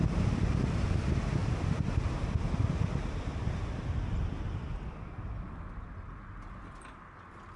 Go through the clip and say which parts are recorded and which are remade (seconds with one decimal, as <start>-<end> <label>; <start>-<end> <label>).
0.0-1.4 recorded; 1.4-5.5 remade; 5.5-7.6 recorded